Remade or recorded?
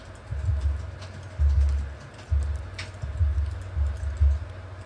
recorded